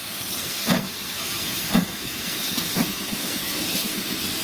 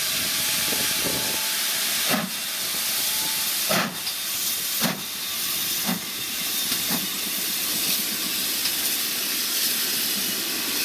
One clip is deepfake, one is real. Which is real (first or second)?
second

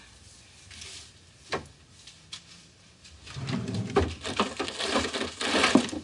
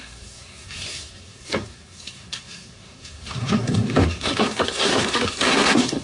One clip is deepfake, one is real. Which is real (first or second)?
first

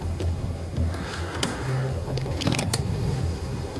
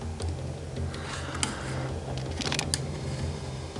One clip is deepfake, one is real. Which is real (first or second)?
second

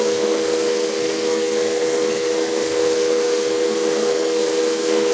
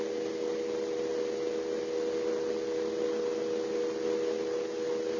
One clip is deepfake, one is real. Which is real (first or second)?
second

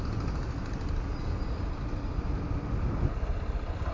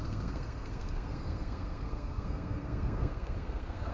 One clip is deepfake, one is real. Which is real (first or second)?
first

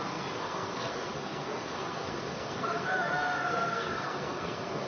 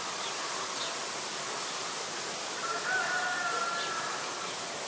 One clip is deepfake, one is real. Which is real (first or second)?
second